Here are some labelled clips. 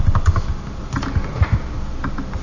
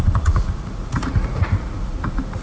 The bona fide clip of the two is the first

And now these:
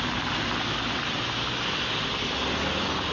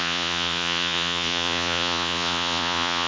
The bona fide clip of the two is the first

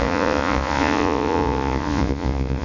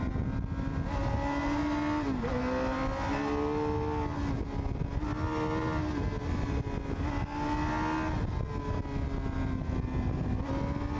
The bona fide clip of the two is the second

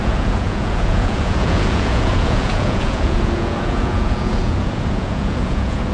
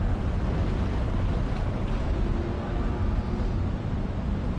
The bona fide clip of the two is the second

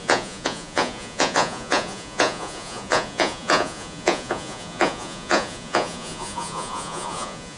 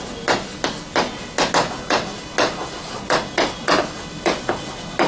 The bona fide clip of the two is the second